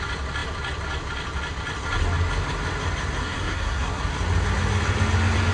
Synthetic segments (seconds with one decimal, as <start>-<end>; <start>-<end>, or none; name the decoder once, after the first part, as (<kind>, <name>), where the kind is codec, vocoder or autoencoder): 3.2-4.0 (codec, SNAC)